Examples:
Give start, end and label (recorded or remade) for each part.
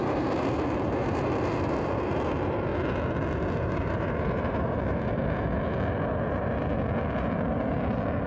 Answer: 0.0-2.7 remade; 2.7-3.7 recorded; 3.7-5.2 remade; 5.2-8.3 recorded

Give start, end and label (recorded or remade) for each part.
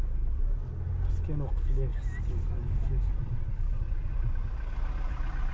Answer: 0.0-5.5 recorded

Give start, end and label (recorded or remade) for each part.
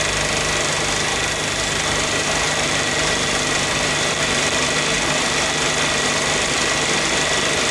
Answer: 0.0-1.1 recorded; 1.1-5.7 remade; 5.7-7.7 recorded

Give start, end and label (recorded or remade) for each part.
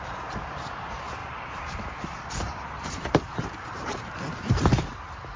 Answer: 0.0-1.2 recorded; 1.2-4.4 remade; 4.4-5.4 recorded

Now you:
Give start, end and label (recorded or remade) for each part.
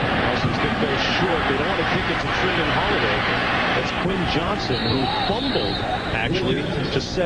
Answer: 0.0-7.3 remade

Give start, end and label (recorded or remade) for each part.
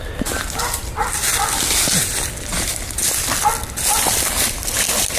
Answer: 0.0-1.3 remade; 1.3-2.0 recorded; 2.0-2.7 remade; 2.7-5.2 recorded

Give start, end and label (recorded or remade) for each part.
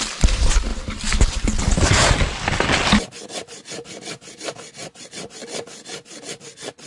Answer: 0.0-4.8 recorded; 4.8-5.4 remade; 5.4-6.9 recorded